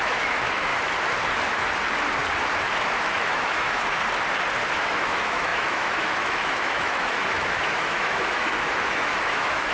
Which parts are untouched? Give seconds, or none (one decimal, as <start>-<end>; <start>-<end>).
0.7-3.0; 4.0-4.7